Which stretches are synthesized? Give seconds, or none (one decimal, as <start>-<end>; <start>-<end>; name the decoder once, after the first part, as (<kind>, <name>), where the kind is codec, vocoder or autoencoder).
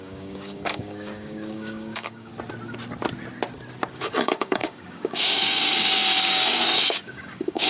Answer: 0.0-2.3 (codec, DAC); 3.9-7.7